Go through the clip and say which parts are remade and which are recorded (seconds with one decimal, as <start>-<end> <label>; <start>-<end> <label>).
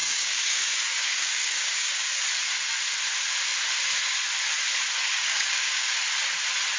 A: 0.0-2.1 remade; 2.1-5.1 recorded; 5.1-6.0 remade; 6.0-6.8 recorded